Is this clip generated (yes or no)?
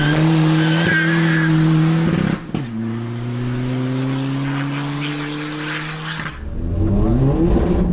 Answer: no